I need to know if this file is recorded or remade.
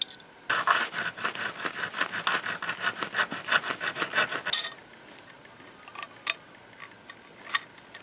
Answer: recorded